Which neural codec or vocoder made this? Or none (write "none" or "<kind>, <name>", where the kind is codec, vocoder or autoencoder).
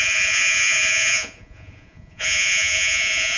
vocoder, Vocos